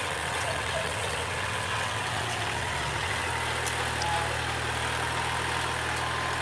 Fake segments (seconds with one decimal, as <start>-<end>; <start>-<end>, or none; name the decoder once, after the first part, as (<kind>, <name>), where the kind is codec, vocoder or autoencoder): 0.0-3.3 (vocoder, WaveNeXt)